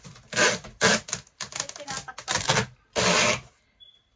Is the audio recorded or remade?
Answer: recorded